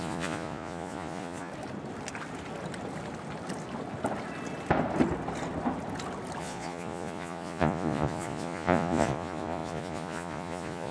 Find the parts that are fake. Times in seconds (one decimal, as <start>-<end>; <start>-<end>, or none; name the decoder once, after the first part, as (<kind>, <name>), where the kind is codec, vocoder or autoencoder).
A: 0.0-1.5 (vocoder, Vocos); 6.4-10.9